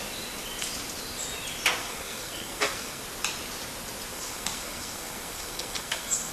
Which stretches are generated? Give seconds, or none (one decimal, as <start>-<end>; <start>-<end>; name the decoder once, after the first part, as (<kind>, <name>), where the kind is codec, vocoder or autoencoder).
1.8-3.0 (codec, SNAC); 4.1-6.3